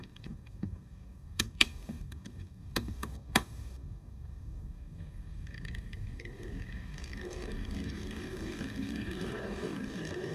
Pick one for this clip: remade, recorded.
remade